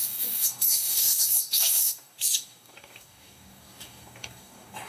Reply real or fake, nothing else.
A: fake